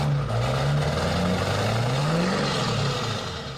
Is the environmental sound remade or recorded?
recorded